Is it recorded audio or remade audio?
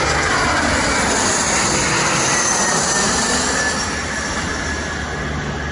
recorded